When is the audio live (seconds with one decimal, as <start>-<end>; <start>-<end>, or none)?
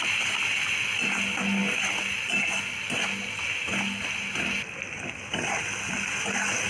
0.0-6.7